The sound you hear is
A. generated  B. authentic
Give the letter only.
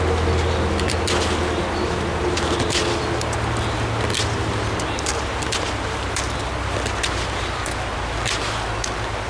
A